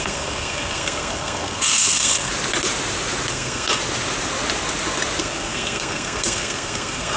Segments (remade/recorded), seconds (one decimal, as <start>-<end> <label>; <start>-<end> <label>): 0.0-2.3 remade; 2.3-3.3 recorded; 3.3-3.8 remade; 3.8-5.2 recorded; 5.2-7.2 remade